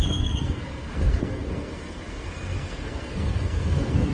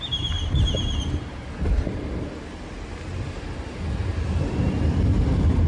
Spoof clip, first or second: first